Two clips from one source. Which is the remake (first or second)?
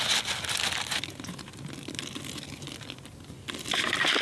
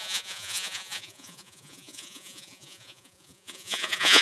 second